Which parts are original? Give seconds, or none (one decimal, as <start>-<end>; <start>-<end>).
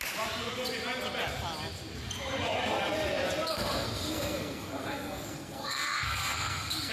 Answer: 0.0-3.5